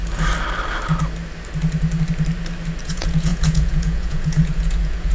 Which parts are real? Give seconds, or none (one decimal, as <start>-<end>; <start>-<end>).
0.0-2.8